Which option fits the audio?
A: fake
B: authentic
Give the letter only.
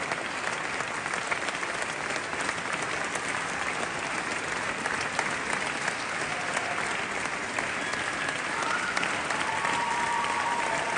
B